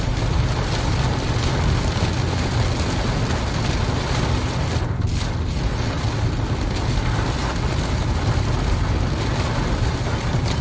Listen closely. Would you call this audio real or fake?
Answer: real